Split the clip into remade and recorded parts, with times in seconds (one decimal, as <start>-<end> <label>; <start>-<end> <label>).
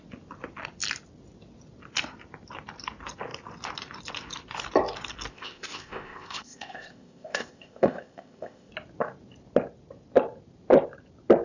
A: 0.0-5.3 recorded; 5.3-8.7 remade; 8.7-11.4 recorded